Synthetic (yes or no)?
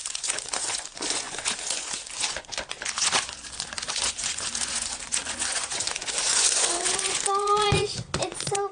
yes